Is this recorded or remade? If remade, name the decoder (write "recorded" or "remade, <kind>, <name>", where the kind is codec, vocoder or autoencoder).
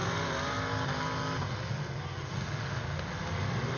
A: recorded